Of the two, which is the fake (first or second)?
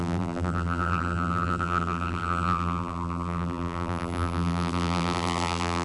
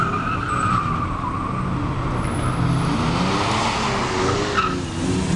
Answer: first